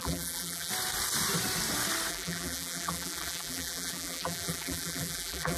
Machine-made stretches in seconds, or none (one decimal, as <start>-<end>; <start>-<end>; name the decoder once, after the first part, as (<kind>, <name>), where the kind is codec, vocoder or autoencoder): 0.0-0.7 (vocoder, BigVGAN v2); 2.1-5.6